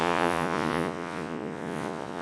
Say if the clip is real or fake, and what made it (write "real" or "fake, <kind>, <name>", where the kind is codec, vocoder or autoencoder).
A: fake, vocoder, Vocos